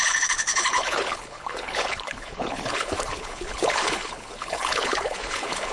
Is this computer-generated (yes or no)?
yes